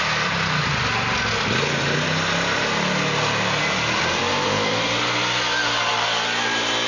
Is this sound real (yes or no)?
yes